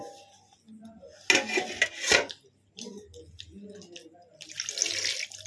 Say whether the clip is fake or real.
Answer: real